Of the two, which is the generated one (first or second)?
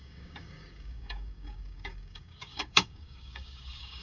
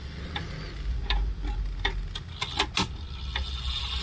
first